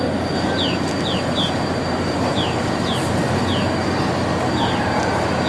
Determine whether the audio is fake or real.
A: real